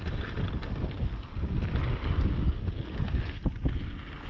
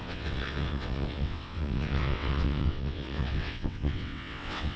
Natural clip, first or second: first